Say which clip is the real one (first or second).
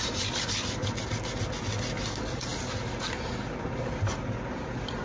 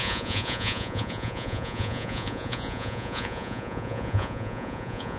first